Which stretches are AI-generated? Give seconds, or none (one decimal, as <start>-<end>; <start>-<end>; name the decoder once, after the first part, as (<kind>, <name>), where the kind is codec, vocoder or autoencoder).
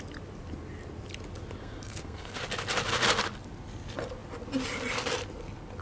1.6-2.4 (codec, SNAC)